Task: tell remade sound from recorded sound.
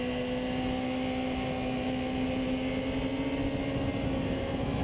recorded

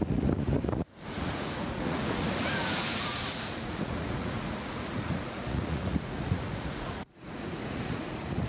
remade